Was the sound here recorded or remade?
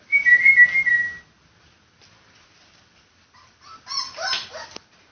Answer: recorded